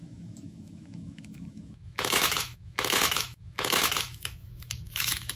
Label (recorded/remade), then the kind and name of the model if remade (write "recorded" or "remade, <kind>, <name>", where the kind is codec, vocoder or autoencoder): remade, autoencoder, DAC-VAE